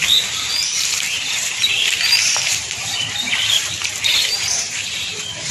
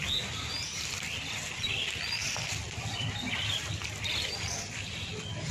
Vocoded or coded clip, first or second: first